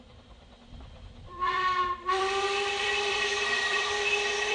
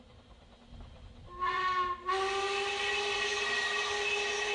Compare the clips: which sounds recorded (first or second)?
second